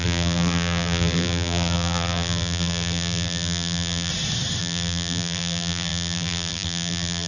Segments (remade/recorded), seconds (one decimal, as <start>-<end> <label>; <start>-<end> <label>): 0.0-4.1 remade; 4.1-4.6 recorded; 4.6-7.3 remade